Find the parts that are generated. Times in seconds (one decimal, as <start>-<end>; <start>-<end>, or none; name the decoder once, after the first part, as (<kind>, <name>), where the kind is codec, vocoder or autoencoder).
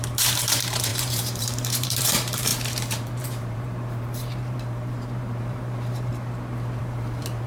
0.0-6.1 (vocoder, BigVGAN v2); 6.8-7.5